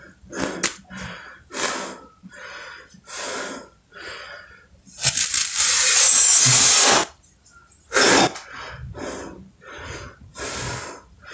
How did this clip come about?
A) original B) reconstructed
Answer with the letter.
A